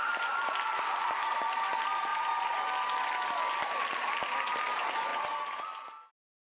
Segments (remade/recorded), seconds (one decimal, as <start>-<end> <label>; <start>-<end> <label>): 0.0-6.5 recorded